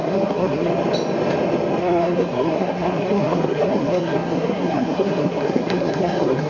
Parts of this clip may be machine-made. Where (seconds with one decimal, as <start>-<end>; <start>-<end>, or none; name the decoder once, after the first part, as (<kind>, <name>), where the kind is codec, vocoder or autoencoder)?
0.0-0.7 (codec, SNAC); 1.8-6.5